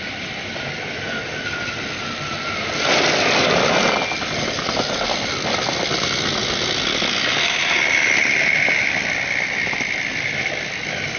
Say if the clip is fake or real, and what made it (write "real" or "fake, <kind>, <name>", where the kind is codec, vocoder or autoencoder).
real